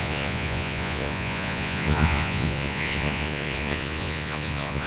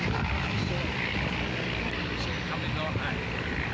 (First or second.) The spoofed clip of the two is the first